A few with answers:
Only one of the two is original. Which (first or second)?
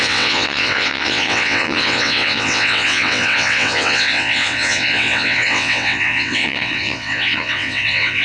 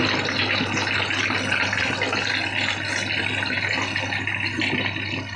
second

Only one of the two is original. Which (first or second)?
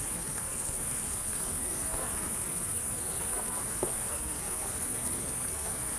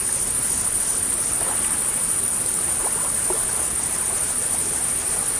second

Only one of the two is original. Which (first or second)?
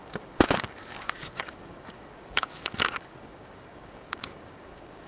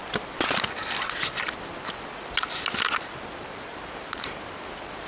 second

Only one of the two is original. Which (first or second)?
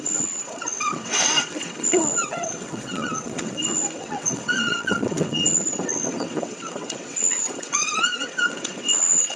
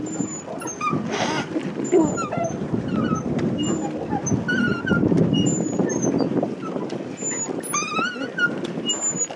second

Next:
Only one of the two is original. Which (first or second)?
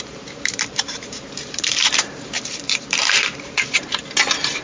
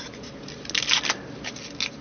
second